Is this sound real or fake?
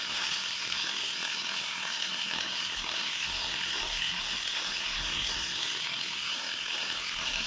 fake